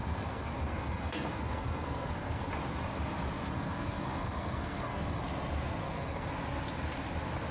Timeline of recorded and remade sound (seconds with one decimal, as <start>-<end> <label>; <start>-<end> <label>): 0.0-2.5 remade; 2.5-3.4 recorded; 3.4-5.2 remade; 5.2-5.8 recorded; 5.8-6.3 remade; 6.3-7.5 recorded